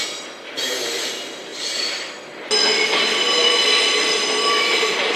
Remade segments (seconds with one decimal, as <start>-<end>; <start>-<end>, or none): none